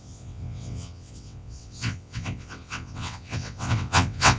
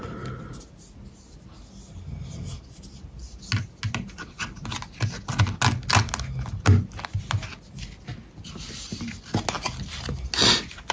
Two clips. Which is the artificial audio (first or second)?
first